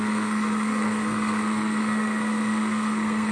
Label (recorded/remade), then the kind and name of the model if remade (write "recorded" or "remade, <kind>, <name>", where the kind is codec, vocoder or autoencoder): remade, codec, SNAC